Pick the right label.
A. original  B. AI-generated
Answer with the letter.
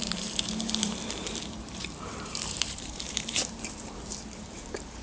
B